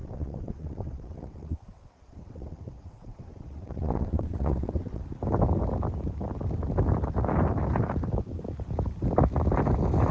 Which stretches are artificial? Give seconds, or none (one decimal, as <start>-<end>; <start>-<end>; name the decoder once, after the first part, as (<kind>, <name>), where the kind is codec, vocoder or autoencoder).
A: 0.0-5.0 (vocoder, WaveNeXt)